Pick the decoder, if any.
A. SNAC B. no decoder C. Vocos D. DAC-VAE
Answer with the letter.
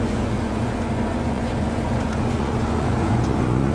C